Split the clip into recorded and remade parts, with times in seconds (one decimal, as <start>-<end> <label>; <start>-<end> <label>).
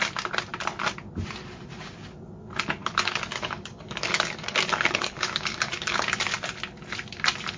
0.0-2.8 recorded; 2.8-6.2 remade; 6.2-7.6 recorded